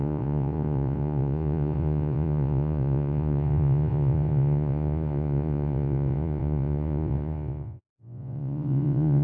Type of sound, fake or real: fake